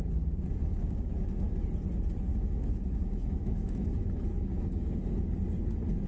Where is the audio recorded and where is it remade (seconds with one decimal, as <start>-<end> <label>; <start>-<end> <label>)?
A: 0.0-0.5 recorded; 0.5-1.6 remade; 1.6-2.3 recorded; 2.3-5.0 remade; 5.0-6.1 recorded